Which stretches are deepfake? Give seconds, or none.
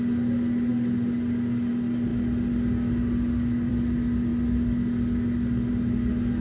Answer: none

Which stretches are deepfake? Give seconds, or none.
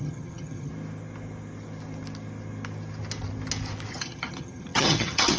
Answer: 0.0-0.7 (vocoder, HiFi-GAN); 3.9-5.4